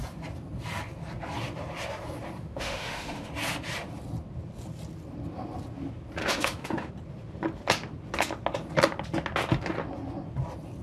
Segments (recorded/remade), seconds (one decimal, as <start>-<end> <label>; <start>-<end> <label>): 0.0-2.4 recorded; 2.4-3.3 remade; 3.3-6.2 recorded; 6.2-6.9 remade; 6.9-10.8 recorded